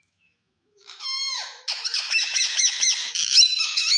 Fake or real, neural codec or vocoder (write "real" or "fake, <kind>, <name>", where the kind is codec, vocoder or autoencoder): fake, autoencoder, DAC-VAE